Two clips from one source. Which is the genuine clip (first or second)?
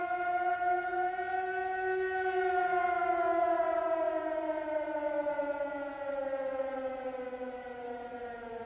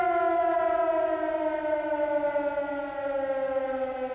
second